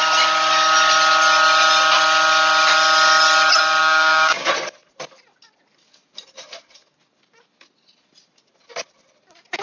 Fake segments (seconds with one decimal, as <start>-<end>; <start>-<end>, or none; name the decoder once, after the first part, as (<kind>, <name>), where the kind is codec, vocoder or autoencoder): 3.8-4.5 (codec, DAC)